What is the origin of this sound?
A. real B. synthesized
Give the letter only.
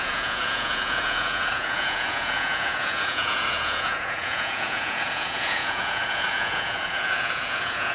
B